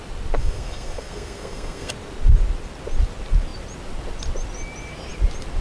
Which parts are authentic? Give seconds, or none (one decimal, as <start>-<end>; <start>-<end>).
0.0-0.4; 1.9-5.6